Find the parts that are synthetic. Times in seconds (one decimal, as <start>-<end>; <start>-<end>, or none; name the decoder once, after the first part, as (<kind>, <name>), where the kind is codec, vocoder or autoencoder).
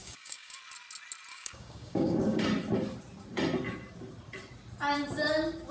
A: 0.0-0.6 (codec, DAC); 1.3-2.4